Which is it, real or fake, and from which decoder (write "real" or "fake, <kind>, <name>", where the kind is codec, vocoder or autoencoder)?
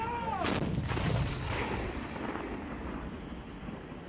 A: real